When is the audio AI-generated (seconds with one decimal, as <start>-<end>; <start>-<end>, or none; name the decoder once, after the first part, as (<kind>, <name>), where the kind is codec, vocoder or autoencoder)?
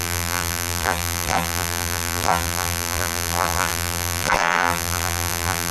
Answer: 0.0-5.7 (vocoder, BigVGAN v2)